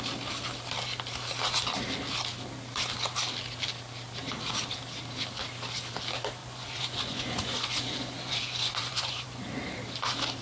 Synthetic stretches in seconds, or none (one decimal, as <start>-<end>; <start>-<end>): 6.4-9.5